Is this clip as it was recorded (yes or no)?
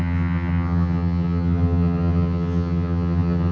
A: no